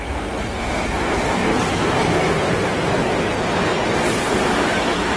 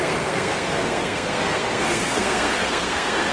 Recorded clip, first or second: first